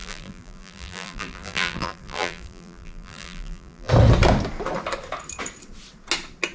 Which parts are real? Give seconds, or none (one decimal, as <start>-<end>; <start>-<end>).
3.9-6.5